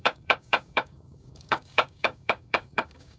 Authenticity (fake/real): fake